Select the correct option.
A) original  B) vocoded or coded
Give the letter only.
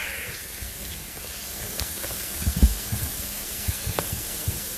B